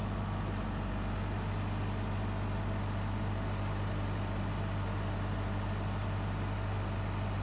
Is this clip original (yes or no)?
yes